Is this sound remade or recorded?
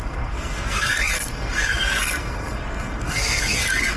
remade